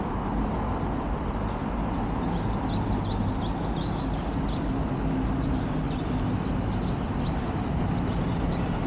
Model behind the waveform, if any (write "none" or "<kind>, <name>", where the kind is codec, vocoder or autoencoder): none